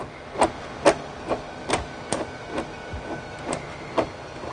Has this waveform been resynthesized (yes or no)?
no